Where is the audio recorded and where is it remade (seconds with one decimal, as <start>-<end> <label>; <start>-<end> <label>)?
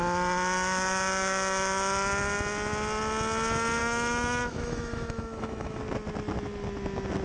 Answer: 0.0-3.8 recorded; 3.8-5.8 remade; 5.8-7.2 recorded